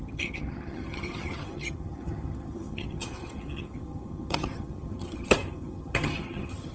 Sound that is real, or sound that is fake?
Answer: fake